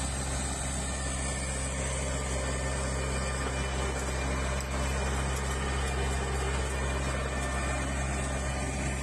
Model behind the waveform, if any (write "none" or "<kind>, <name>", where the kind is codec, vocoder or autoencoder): none